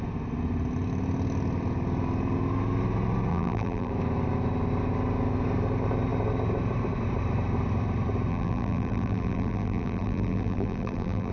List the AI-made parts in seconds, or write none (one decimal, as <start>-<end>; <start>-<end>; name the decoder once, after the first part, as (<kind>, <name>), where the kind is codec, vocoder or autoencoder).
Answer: 3.3-3.9 (vocoder, BigVGAN v2); 8.3-11.3